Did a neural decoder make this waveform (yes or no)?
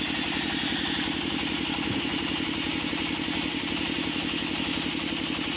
no